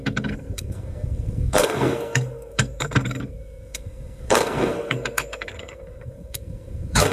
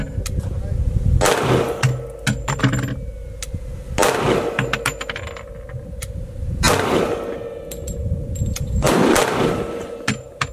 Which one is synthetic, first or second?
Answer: first